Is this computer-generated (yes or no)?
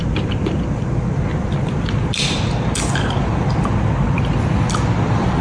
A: no